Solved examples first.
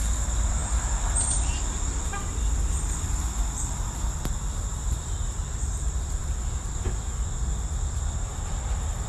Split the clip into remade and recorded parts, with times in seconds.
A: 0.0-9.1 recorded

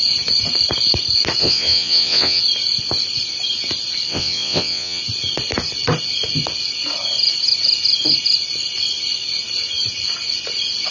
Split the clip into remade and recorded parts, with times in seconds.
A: 0.0-1.4 recorded; 1.4-2.4 remade; 2.4-4.1 recorded; 4.1-5.0 remade; 5.0-10.9 recorded

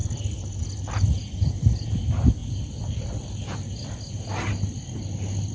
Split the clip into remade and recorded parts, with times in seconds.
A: 0.0-0.6 remade; 0.6-5.5 recorded